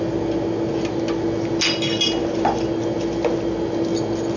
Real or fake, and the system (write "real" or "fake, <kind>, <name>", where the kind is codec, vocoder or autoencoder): real